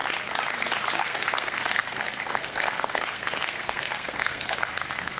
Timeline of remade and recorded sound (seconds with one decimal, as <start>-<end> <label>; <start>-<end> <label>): 0.0-0.9 recorded; 0.9-5.2 remade